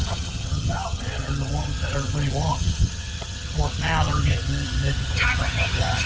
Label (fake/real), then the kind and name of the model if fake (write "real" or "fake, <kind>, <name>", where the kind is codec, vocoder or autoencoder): fake, vocoder, HiFi-GAN